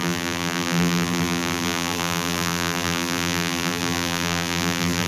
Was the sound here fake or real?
fake